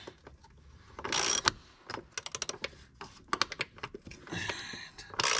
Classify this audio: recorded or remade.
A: recorded